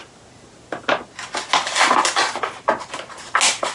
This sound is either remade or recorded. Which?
recorded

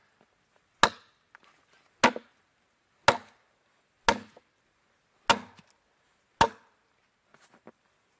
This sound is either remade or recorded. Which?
recorded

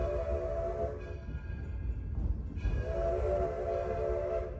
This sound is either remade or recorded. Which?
recorded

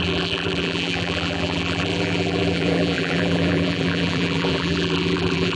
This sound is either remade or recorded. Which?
remade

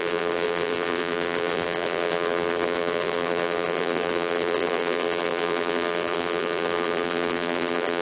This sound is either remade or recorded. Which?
remade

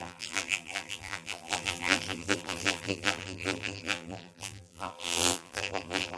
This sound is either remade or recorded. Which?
remade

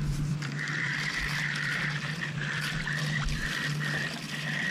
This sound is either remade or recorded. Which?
remade